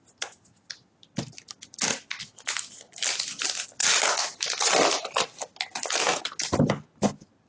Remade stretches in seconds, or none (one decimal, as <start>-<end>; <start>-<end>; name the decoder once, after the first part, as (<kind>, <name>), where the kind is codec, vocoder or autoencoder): none